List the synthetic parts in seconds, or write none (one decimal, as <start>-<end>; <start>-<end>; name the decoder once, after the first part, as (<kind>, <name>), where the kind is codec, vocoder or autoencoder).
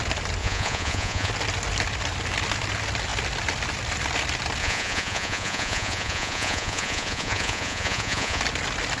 0.4-1.3 (vocoder, Vocos); 4.6-8.4